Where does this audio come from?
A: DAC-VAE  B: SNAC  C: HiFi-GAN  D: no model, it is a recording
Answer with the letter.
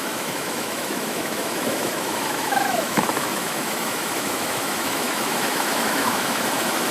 A